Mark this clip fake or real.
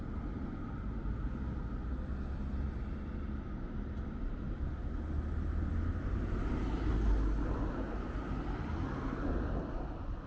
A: real